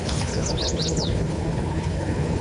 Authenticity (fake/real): fake